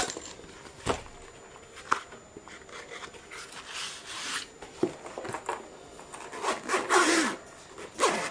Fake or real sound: real